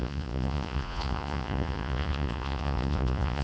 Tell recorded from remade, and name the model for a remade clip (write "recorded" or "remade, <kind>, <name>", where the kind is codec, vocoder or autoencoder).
remade, vocoder, Vocos